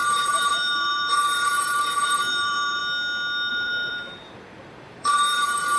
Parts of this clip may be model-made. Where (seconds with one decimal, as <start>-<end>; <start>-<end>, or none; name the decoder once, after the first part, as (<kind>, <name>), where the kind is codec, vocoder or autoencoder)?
0.0-2.8 (vocoder, BigVGAN v2); 3.5-5.8

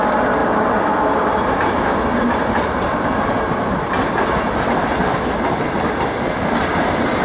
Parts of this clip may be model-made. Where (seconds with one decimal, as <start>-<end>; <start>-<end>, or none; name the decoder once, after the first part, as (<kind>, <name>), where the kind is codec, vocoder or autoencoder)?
none

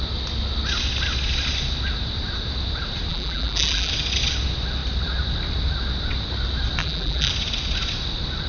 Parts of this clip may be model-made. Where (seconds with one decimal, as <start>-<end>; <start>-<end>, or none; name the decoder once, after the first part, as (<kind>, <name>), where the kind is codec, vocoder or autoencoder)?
3.1-3.9 (vocoder, BigVGAN v2); 6.8-7.3

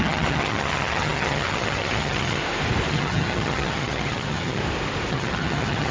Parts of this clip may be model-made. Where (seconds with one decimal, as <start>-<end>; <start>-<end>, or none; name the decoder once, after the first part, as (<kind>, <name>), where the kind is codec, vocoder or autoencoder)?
0.0-2.4 (vocoder, HiFi-GAN); 2.9-4.6; 5.1-5.9

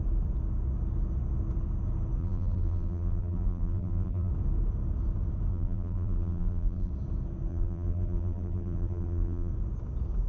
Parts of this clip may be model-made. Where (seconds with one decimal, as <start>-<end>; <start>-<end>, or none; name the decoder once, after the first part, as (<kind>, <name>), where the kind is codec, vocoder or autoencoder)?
2.2-4.3 (vocoder, BigVGAN v2); 5.5-6.9; 7.5-9.5

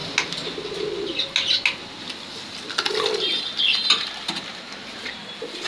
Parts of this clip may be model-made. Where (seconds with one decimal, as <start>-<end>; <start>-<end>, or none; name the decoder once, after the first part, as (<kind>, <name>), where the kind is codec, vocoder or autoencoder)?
none